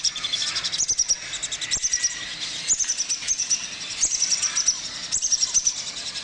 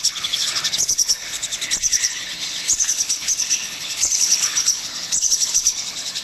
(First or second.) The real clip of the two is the first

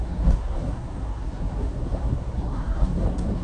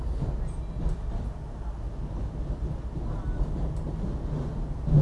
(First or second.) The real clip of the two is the second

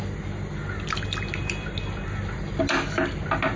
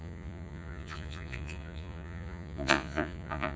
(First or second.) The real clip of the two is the first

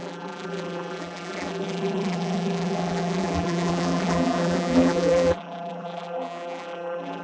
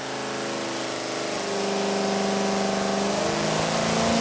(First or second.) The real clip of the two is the second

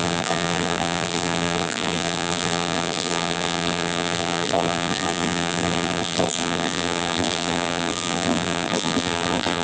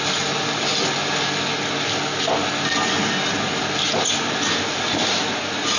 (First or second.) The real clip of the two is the second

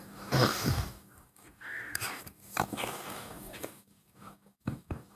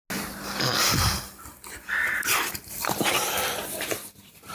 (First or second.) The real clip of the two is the second